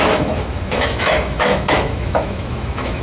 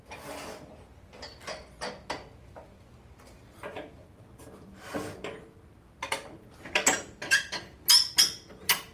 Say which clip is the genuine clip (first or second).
second